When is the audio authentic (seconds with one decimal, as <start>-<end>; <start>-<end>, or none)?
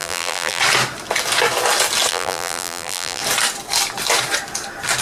0.6-2.1; 3.2-5.0